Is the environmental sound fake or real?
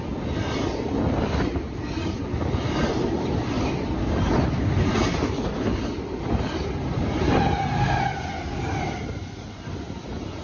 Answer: real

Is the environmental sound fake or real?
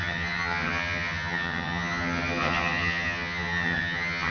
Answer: fake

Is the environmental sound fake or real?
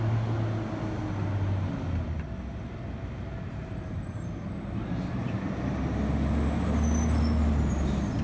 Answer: real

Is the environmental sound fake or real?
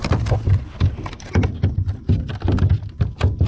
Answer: real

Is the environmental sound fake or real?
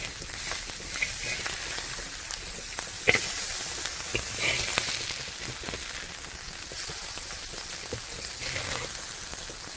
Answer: real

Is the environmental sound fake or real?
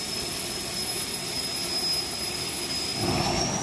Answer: real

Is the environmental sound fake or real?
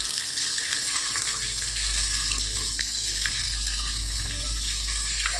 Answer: fake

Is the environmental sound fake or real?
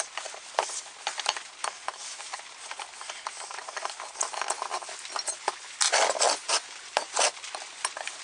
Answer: real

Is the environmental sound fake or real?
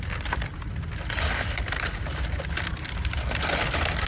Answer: real